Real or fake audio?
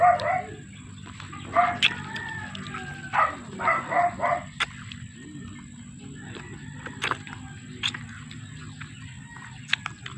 real